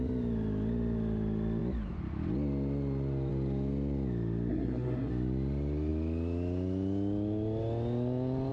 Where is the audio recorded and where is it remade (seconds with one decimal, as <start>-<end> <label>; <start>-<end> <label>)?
0.0-4.5 recorded; 4.5-5.1 remade; 5.1-8.5 recorded